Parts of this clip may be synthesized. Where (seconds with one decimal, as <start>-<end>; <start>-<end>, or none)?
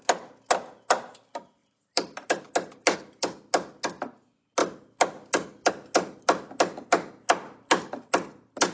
1.6-2.4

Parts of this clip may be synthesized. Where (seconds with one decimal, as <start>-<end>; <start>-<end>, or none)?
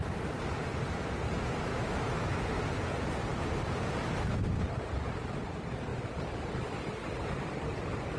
1.7-2.6